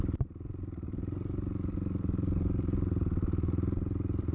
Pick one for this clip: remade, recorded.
recorded